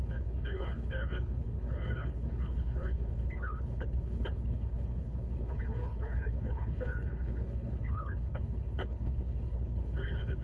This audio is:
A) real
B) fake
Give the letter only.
B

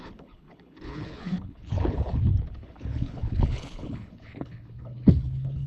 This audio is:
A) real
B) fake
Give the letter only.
B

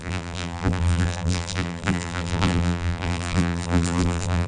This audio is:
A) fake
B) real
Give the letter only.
A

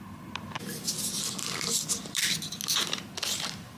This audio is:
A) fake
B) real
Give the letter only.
B